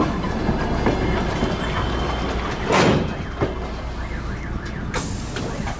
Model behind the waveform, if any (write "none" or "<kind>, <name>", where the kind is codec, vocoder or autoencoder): none